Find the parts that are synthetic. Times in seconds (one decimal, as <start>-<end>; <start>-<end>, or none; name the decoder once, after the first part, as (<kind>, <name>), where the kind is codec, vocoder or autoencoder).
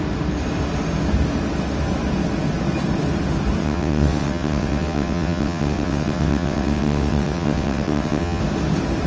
3.6-8.4 (vocoder, WaveNeXt)